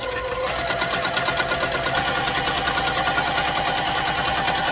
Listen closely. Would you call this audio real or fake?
real